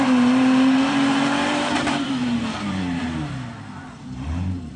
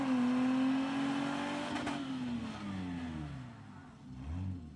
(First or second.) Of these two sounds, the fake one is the first